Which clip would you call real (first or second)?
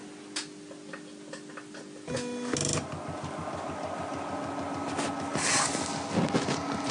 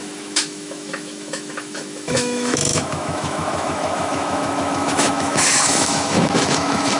first